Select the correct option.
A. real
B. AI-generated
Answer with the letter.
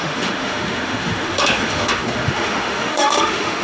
B